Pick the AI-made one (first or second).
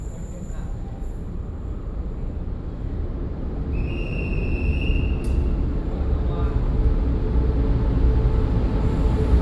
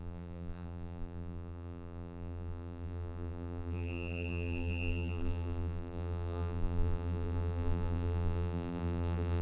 second